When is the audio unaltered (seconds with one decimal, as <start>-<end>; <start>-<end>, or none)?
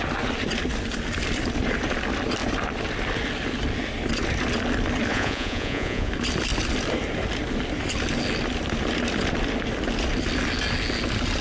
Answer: 0.0-5.1; 6.1-11.4